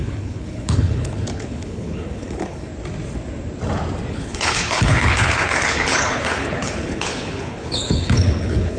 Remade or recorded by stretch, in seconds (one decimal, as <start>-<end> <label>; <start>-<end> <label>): 0.0-2.7 remade; 2.7-4.1 recorded; 4.1-8.8 remade